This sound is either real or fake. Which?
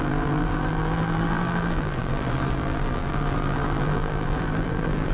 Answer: fake